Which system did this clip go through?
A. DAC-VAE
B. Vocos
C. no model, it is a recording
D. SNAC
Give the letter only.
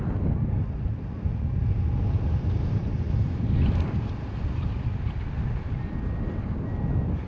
C